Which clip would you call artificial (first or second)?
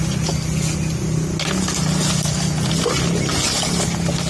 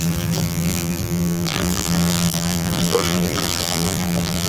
second